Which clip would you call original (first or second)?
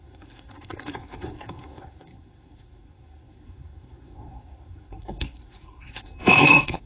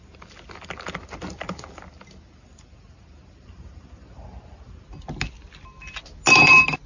second